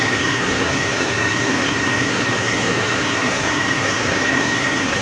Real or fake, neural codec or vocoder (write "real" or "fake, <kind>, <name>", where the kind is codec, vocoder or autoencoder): fake, codec, SNAC